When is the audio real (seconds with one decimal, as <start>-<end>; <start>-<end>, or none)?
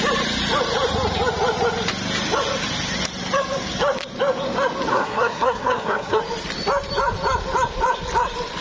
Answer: 0.0-4.9; 6.2-8.6